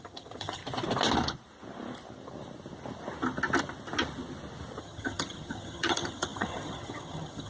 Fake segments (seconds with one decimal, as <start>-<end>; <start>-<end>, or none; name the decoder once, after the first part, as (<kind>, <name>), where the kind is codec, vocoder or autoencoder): 0.0-0.6 (vocoder, HiFi-GAN); 4.8-7.5